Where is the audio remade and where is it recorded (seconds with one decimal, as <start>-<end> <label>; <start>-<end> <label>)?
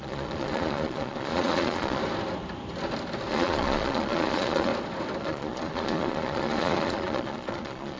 0.0-2.0 remade; 2.0-3.3 recorded; 3.3-4.7 remade; 4.7-5.2 recorded; 5.2-8.0 remade